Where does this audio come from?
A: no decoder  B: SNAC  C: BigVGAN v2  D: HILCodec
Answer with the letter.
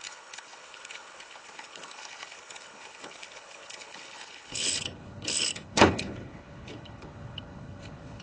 D